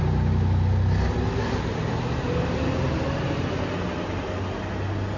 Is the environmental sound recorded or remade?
recorded